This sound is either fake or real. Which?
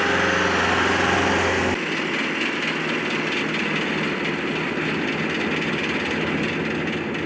real